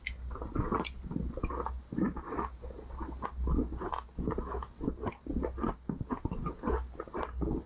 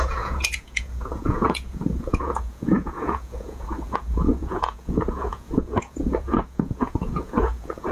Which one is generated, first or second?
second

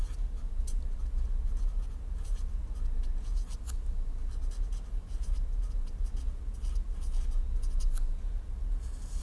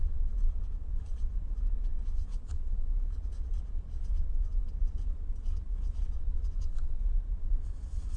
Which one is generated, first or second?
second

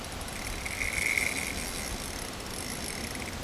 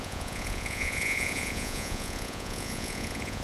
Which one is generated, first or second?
second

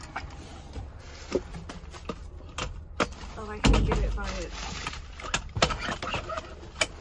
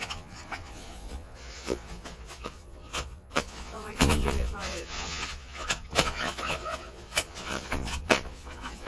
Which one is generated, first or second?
second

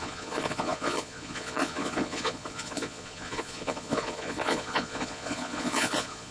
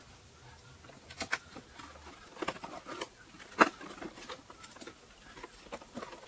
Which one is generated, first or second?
first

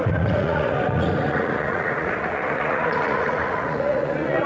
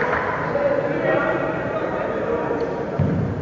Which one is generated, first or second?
first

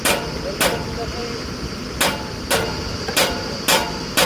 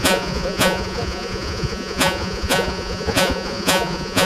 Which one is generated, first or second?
second